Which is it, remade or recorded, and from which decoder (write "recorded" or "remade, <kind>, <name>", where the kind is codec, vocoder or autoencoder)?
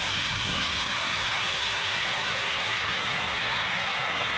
remade, codec, SNAC